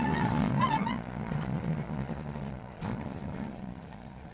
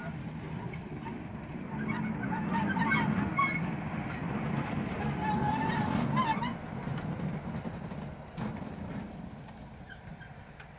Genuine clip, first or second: second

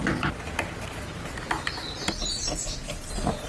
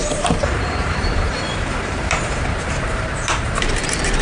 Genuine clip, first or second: first